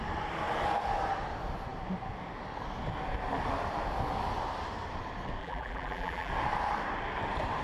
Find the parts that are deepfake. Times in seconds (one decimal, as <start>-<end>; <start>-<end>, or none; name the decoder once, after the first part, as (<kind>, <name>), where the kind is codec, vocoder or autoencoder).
5.4-6.3 (vocoder, BigVGAN v2)